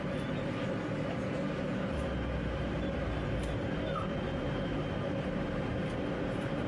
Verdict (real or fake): fake